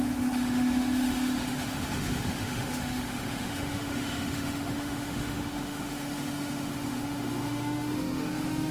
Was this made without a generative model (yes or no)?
no